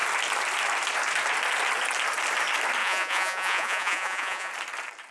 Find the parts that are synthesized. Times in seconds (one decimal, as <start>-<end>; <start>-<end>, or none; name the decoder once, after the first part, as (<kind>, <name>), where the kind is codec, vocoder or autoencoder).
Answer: 2.8-4.5 (vocoder, Vocos)